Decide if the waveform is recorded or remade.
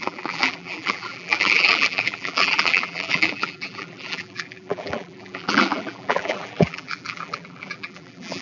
remade